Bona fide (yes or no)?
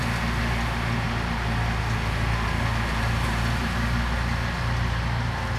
yes